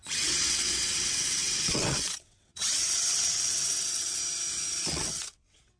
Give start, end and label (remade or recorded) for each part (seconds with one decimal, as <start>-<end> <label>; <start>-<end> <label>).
0.0-4.2 remade; 4.2-4.9 recorded; 4.9-5.8 remade